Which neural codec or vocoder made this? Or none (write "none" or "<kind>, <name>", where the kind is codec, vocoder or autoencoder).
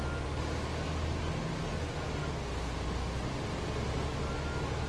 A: none